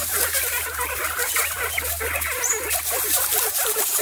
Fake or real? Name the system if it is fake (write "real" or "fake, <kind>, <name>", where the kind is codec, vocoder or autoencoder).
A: fake, vocoder, BigVGAN v2